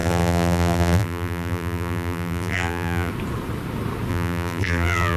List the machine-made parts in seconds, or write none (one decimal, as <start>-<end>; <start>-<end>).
0.0-3.1; 4.1-5.2